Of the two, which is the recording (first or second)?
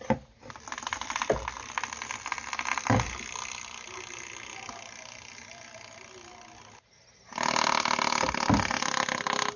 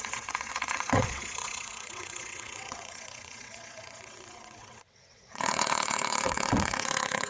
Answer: first